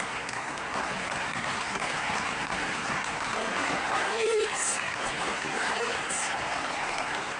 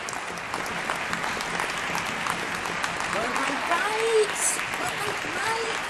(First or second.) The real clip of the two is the second